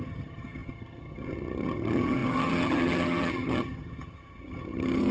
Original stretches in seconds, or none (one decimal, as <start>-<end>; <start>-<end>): none